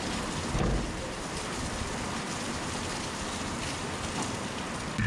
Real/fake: real